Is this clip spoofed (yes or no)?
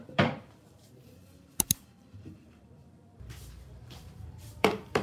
yes